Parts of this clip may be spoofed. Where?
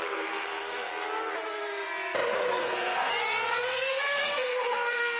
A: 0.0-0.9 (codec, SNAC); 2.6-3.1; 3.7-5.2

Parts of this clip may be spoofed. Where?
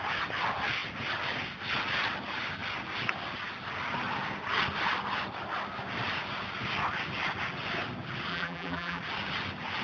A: 8.3-9.0 (vocoder, BigVGAN v2)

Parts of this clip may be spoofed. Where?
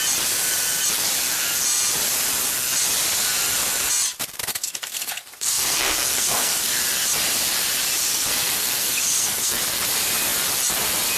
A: 4.5-6.8 (codec, SNAC); 8.1-9.6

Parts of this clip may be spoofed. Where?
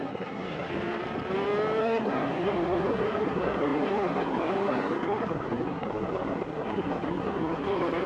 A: 0.0-0.7 (codec, SNAC); 1.8-8.1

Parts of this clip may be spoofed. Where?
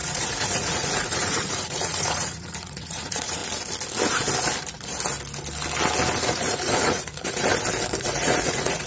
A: 0.0-3.4 (vocoder, Vocos); 6.2-7.5; 8.0-8.9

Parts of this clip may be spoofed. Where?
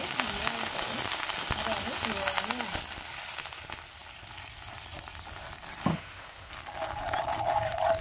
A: 5.9-6.5 (autoencoder, DAC-VAE)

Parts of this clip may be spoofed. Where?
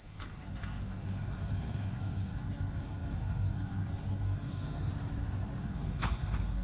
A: 0.0-4.9 (codec, SNAC); 5.6-6.6